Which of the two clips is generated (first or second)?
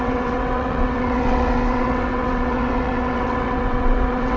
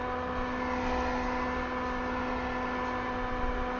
first